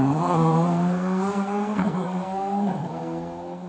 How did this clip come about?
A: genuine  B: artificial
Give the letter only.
B